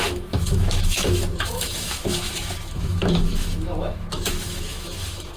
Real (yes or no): no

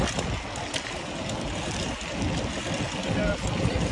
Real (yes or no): yes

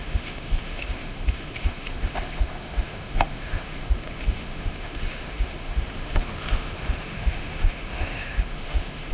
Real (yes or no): no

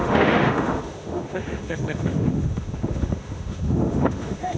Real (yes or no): no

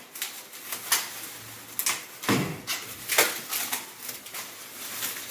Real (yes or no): yes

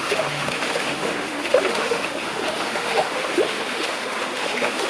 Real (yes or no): no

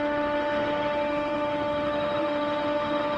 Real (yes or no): no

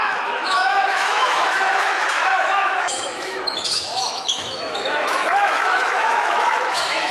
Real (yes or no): no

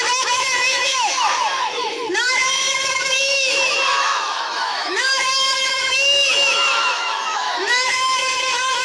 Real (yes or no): no